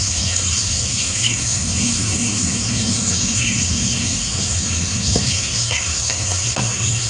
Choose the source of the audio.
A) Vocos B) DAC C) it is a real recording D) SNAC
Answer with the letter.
D